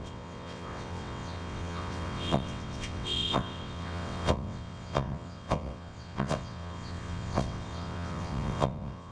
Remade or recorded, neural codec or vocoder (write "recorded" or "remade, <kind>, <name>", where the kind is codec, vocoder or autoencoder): remade, vocoder, WaveNeXt